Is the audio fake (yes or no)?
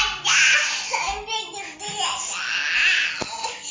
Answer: no